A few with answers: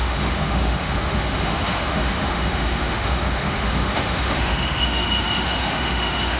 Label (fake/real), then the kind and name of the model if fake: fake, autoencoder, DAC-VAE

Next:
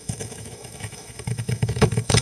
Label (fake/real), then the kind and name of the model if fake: fake, autoencoder, DAC-VAE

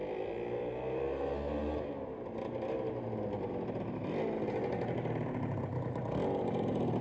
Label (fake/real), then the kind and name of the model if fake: real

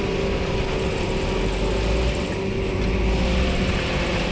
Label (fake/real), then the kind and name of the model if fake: real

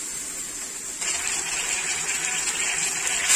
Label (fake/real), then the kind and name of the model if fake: real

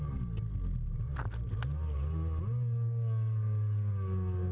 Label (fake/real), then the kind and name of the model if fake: real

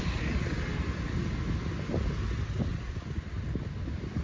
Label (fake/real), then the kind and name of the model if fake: real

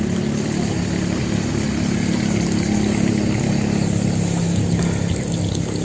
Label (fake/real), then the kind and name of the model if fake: real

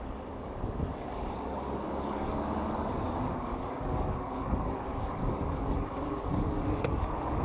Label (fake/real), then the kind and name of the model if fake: fake, codec, DAC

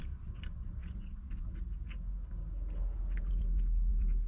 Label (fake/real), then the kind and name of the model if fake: real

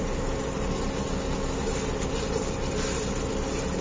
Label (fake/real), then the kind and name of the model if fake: real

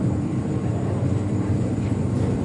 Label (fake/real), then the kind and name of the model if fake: fake, vocoder, BigVGAN v2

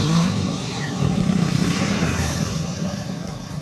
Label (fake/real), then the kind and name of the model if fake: fake, codec, SNAC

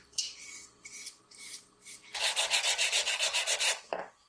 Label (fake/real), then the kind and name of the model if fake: real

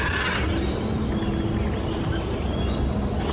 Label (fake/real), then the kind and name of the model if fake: real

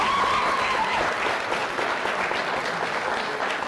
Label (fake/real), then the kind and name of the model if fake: real